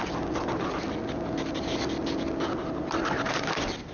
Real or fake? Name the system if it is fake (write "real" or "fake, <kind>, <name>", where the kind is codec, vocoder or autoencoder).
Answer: real